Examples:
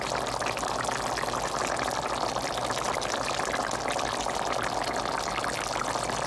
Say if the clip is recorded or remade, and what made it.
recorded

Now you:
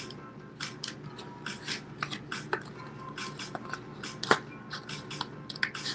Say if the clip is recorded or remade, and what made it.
recorded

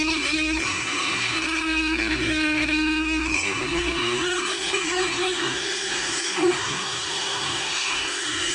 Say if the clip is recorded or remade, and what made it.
remade, codec, SNAC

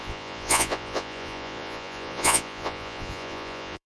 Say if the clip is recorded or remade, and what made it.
remade, vocoder, Vocos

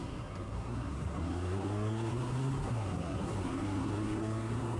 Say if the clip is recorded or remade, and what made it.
remade, codec, SNAC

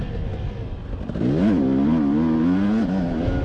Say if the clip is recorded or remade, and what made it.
recorded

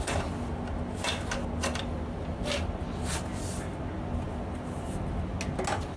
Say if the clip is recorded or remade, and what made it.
recorded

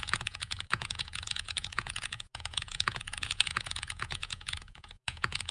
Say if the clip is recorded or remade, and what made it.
remade, vocoder, Vocos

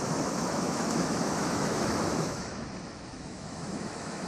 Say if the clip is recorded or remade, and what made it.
remade, autoencoder, DAC-VAE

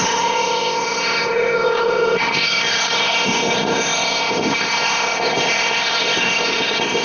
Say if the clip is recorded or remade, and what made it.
remade, codec, ZipCodec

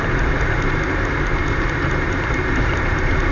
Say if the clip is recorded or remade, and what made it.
remade, vocoder, BigVGAN v2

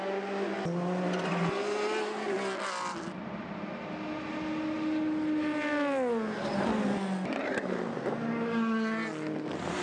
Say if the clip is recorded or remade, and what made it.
recorded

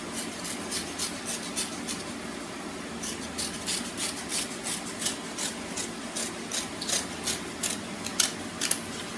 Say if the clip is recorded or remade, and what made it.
recorded